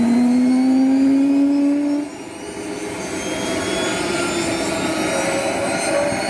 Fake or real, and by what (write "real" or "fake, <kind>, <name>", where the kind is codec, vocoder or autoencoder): real